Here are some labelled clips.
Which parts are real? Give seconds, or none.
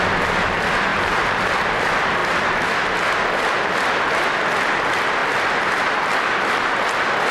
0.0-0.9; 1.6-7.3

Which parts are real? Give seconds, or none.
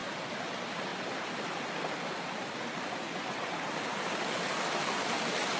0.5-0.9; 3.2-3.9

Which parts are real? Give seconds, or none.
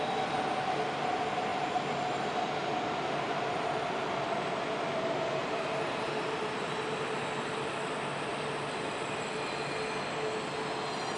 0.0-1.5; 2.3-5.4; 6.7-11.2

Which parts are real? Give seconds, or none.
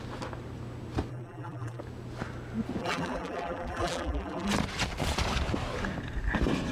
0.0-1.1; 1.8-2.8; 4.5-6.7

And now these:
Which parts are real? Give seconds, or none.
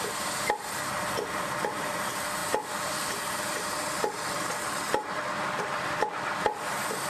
0.0-2.4